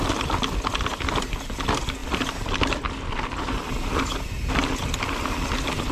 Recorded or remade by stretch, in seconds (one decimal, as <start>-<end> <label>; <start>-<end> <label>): 0.0-5.9 recorded

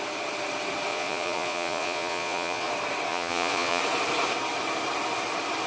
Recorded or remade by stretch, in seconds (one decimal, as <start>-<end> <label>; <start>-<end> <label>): 0.0-0.9 recorded; 0.9-2.7 remade; 2.7-3.1 recorded; 3.1-3.8 remade; 3.8-5.7 recorded

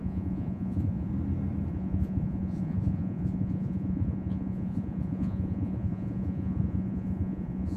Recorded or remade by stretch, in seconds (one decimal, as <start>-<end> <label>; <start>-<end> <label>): 0.0-1.1 remade; 1.1-1.7 recorded; 1.7-7.8 remade

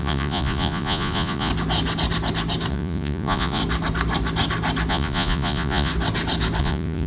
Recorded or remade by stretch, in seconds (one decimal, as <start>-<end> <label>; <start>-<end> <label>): 0.0-1.5 remade; 1.5-2.7 recorded; 2.7-3.6 remade; 3.6-4.9 recorded; 4.9-5.9 remade; 5.9-6.6 recorded; 6.6-7.1 remade

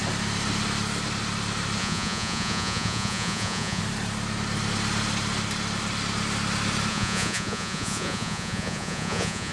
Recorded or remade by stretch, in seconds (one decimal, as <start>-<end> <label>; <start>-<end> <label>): 0.0-1.8 recorded; 1.8-3.8 remade; 3.8-6.9 recorded; 6.9-9.5 remade